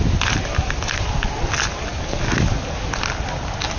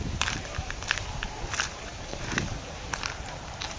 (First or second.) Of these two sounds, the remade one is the second